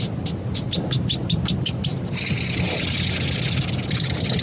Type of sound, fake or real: real